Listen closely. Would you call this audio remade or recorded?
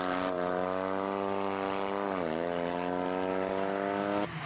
recorded